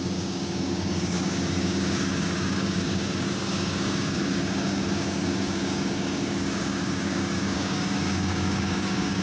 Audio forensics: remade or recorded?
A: remade